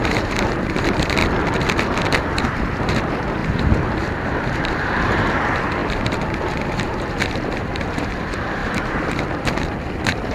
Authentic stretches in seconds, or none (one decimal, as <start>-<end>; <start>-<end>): 1.2-2.4